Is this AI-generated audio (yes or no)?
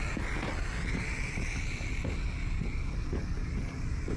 no